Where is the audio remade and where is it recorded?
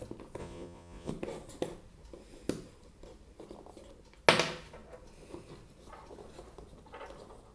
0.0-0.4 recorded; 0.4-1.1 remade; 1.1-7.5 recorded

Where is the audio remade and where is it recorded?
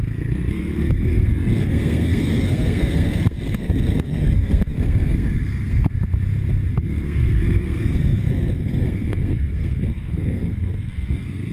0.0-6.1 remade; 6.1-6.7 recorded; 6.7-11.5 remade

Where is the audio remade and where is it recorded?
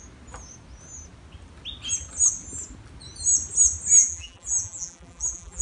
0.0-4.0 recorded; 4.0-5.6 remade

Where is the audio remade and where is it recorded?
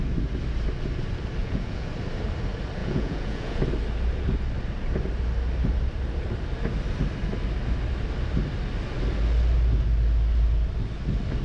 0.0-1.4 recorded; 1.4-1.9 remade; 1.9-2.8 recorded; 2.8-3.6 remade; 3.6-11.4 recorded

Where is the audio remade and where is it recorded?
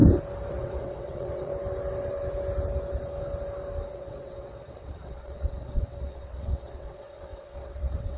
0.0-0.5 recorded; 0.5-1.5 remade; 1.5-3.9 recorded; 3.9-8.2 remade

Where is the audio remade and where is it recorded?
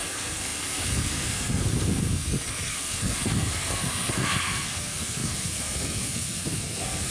0.0-7.1 remade